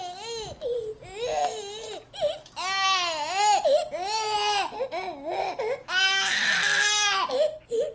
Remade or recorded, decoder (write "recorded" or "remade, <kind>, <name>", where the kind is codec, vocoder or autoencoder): recorded